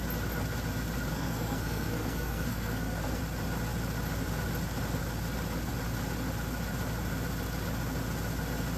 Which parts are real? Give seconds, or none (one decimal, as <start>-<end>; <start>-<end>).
0.0-1.1; 3.2-8.8